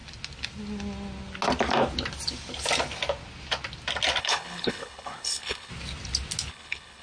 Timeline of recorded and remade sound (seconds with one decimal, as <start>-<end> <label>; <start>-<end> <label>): 0.0-4.2 recorded; 4.2-5.7 remade; 5.7-6.5 recorded; 6.5-7.0 remade